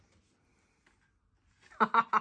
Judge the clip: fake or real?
real